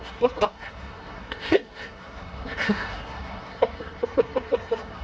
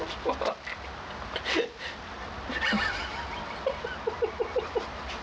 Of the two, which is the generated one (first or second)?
first